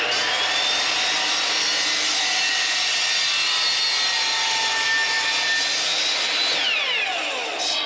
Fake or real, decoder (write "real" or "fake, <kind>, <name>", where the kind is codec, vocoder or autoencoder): real